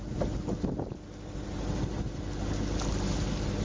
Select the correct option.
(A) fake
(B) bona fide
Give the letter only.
B